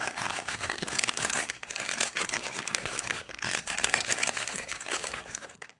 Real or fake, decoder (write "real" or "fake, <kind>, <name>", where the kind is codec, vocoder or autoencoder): fake, codec, SNAC